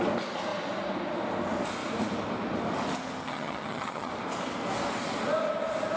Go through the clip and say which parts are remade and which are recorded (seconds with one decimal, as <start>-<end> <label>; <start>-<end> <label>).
0.0-3.2 recorded; 3.2-4.1 remade; 4.1-6.0 recorded